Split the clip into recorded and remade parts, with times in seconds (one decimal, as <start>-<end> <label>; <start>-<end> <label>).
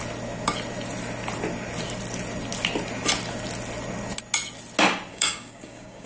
0.0-5.1 recorded; 5.1-6.1 remade